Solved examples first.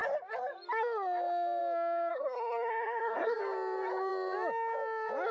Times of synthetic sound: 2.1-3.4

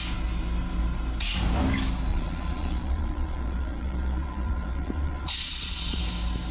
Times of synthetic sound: 2.1-6.0

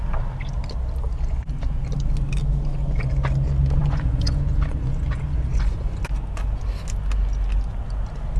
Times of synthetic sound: 3.8-6.0

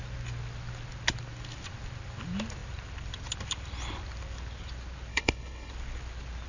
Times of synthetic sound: 5.1-5.7

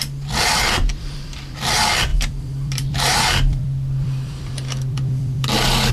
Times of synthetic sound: 0.0-5.9

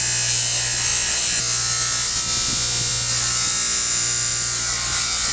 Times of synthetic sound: none